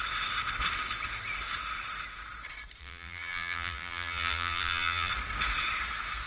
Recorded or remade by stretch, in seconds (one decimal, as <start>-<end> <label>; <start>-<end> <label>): 0.0-2.8 recorded; 2.8-5.1 remade; 5.1-6.3 recorded

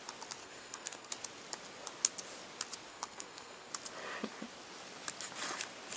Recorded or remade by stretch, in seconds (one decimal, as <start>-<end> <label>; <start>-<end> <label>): 0.0-0.4 recorded; 0.4-1.1 remade; 1.1-2.9 recorded; 2.9-3.7 remade; 3.7-6.0 recorded

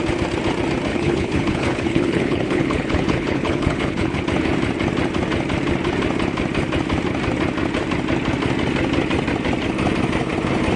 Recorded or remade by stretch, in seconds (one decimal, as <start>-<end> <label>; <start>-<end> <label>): 0.0-0.9 recorded; 0.9-4.2 remade; 4.2-10.8 recorded

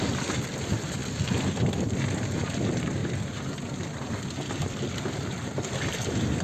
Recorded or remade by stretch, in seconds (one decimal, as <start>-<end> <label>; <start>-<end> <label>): 0.0-6.4 remade

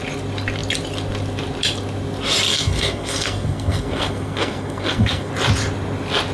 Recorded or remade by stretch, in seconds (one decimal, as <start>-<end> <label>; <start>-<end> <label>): 0.0-2.5 recorded; 2.5-5.3 remade; 5.3-6.3 recorded